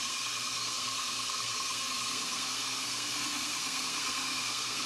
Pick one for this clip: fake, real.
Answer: fake